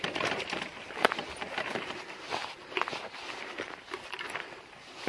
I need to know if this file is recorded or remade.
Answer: remade